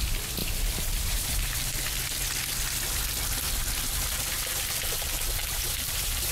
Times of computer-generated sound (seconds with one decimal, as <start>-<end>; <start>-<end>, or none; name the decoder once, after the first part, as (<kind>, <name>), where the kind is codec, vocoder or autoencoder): 0.4-1.6 (vocoder, BigVGAN v2); 5.4-6.3